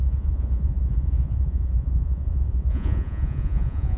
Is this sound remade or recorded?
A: remade